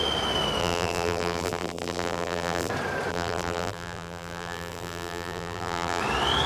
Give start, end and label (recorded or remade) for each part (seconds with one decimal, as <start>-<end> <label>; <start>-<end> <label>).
0.0-0.6 recorded; 0.6-2.7 remade; 2.7-3.1 recorded; 3.1-6.0 remade; 6.0-6.5 recorded